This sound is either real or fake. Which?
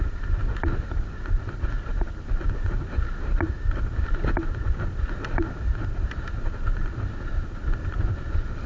real